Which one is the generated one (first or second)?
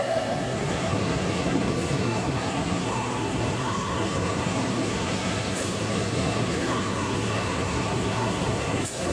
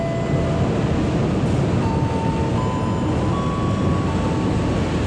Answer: first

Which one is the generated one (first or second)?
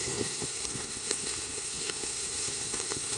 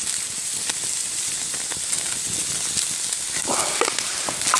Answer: first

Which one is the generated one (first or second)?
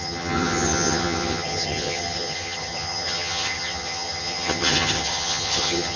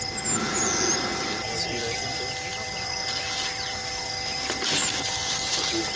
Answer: first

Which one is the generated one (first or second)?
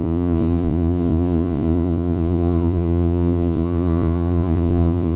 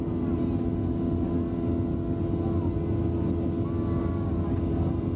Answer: first